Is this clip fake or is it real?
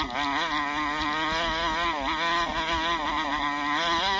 real